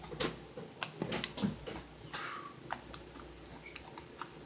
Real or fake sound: real